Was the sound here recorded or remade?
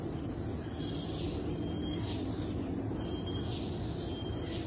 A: recorded